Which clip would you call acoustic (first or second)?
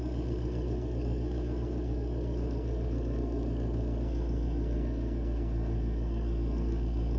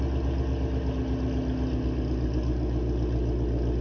second